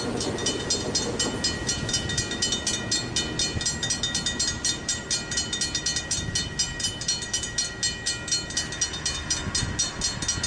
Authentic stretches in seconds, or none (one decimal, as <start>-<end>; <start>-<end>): 0.0-10.5

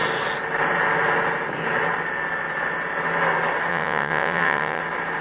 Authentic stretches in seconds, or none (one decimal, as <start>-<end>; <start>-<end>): 0.0-3.7; 4.8-5.2